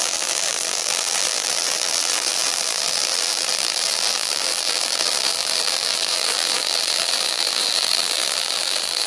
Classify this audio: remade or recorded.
remade